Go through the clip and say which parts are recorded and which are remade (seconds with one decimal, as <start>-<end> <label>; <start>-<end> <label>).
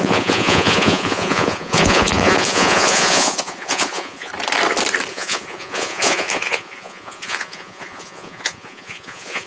0.0-4.3 remade; 4.3-5.1 recorded; 5.1-9.5 remade